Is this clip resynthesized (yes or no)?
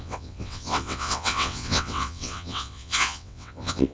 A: yes